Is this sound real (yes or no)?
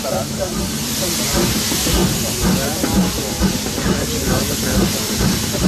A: yes